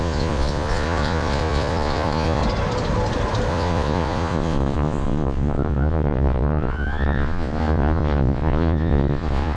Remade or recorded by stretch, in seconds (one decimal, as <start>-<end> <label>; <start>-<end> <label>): 0.0-2.4 remade; 2.4-3.5 recorded; 3.5-9.6 remade